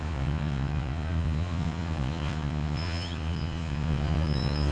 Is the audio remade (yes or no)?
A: yes